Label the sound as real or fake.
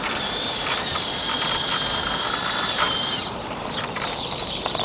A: fake